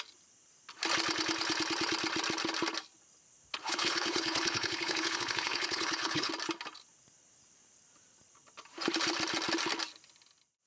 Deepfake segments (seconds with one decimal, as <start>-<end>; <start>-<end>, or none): 3.6-6.3